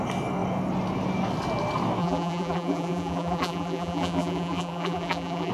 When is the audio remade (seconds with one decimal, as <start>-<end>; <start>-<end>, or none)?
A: 2.0-5.5